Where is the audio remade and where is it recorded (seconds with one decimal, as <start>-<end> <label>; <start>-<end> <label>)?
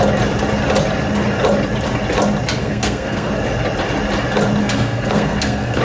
0.0-2.6 recorded; 2.6-3.3 remade; 3.3-4.6 recorded; 4.6-5.8 remade